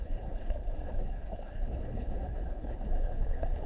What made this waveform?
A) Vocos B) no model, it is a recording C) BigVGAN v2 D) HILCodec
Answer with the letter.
D